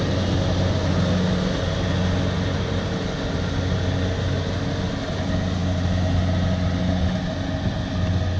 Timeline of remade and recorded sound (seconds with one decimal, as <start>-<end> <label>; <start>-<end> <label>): 0.0-8.4 recorded